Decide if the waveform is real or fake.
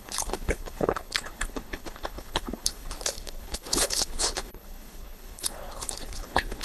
fake